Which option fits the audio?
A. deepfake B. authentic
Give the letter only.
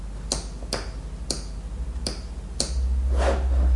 B